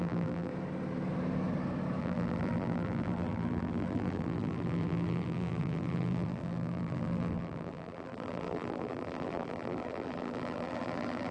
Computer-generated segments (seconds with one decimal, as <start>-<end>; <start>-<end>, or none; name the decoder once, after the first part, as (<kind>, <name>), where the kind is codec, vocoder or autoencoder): 0.0-0.5 (vocoder, BigVGAN v2); 2.0-11.3